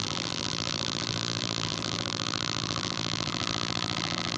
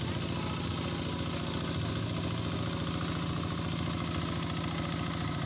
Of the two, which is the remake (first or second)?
first